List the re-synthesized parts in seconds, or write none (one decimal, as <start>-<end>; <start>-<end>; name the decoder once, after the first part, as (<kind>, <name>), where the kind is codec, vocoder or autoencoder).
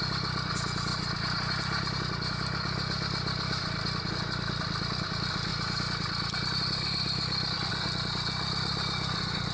none